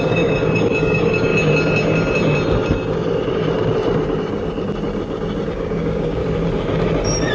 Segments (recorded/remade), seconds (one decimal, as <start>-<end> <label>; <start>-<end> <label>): 0.0-1.3 remade; 1.3-5.5 recorded; 5.5-6.2 remade; 6.2-7.3 recorded